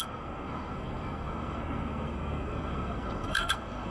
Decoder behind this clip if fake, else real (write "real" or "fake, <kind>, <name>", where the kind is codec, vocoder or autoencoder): fake, codec, SNAC